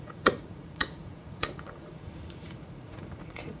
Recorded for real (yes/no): no